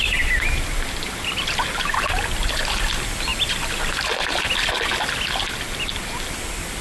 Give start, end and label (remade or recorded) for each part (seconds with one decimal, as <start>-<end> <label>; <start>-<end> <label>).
0.0-6.8 recorded